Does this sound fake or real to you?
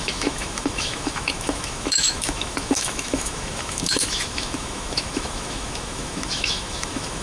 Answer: fake